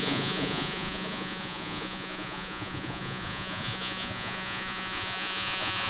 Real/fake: fake